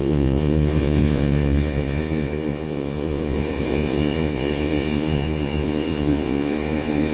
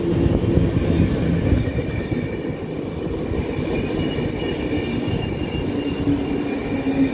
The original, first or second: second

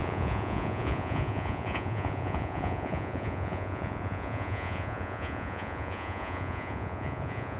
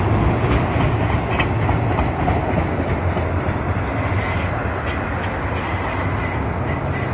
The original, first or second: second